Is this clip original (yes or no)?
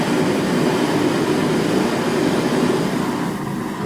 yes